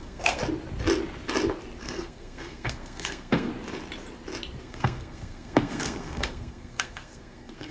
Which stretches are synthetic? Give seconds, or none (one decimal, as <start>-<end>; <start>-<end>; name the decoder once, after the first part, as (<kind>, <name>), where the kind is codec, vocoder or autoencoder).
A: 0.0-0.4 (codec, SNAC); 1.8-3.5; 4.6-7.7